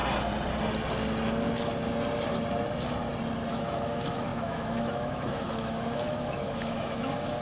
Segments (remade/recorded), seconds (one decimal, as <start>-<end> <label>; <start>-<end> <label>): 0.0-3.5 recorded; 3.5-7.4 remade